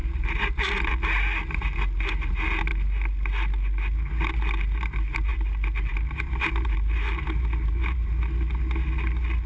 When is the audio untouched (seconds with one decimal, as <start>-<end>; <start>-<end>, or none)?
0.7-5.3; 8.2-9.5